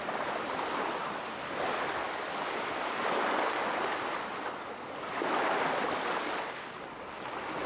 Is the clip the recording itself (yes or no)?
yes